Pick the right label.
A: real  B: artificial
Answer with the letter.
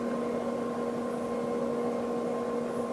A